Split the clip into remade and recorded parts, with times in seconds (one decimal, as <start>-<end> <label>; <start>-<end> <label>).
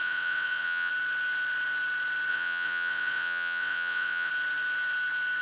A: 0.0-0.9 remade; 0.9-2.3 recorded; 2.3-4.3 remade; 4.3-5.4 recorded